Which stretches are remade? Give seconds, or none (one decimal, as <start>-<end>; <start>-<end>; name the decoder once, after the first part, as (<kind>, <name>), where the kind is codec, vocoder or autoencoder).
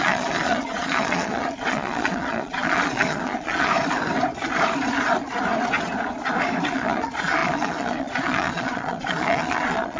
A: 0.0-3.7 (vocoder, Vocos); 6.7-10.0